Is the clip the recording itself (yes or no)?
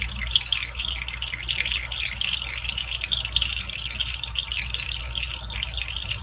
yes